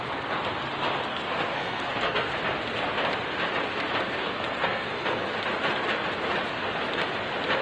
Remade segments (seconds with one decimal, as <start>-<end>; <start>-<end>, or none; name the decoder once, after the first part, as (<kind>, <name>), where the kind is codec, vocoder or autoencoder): 1.1-2.3 (codec, SNAC); 4.2-5.3